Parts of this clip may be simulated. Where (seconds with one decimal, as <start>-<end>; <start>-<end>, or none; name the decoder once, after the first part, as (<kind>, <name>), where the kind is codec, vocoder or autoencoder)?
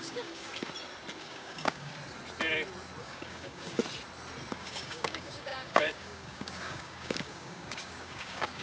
0.0-0.5 (codec, DAC); 1.2-1.9; 3.0-3.8; 4.5-8.6